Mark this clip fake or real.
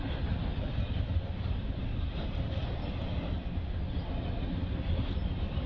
real